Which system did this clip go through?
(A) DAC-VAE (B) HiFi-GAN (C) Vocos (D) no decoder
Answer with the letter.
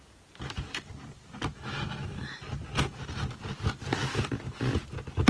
D